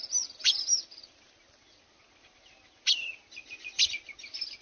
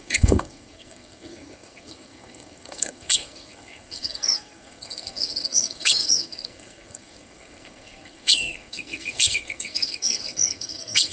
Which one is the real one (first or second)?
first